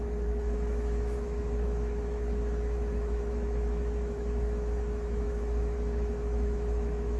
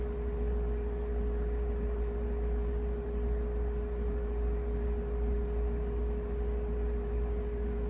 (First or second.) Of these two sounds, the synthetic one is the first